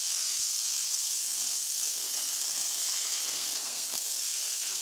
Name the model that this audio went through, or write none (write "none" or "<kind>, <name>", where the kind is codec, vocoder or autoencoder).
codec, SNAC